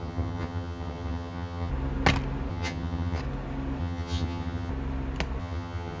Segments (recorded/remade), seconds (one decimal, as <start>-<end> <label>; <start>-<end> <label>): 0.0-1.7 remade; 1.7-2.5 recorded; 2.5-3.2 remade; 3.2-3.8 recorded; 3.8-4.7 remade; 4.7-5.4 recorded; 5.4-6.0 remade